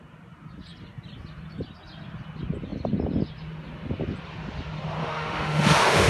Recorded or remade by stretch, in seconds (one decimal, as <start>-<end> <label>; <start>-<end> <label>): 0.0-5.0 recorded; 5.0-6.1 remade